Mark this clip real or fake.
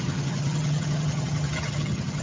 fake